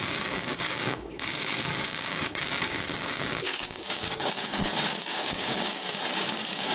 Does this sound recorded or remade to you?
remade